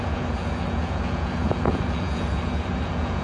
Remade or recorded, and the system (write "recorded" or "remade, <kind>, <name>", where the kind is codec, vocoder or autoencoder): remade, vocoder, Vocos